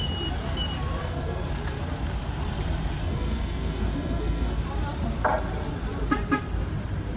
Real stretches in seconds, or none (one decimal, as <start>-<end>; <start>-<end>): 0.0-1.0; 1.5-3.0; 4.6-7.2